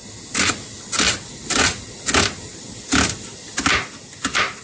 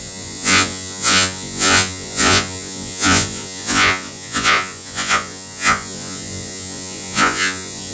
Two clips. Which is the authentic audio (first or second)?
first